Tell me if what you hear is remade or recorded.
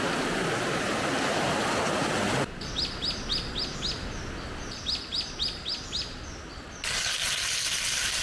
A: recorded